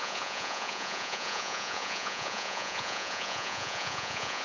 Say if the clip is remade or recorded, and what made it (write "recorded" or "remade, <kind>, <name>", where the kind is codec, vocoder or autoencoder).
remade, vocoder, Vocos